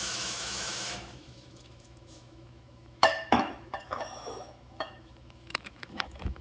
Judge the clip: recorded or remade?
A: remade